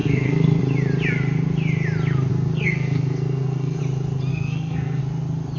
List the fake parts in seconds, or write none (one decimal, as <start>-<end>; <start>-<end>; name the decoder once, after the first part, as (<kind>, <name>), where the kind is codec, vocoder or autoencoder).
0.0-0.6 (codec, SNAC); 2.3-3.8; 4.3-5.0